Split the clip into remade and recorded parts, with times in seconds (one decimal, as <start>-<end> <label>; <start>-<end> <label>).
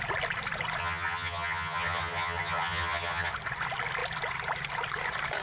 0.0-0.8 recorded; 0.8-3.3 remade; 3.3-5.4 recorded